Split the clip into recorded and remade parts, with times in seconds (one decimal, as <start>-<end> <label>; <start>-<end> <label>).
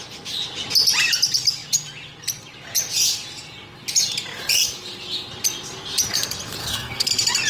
0.0-6.6 recorded; 6.6-7.1 remade; 7.1-7.5 recorded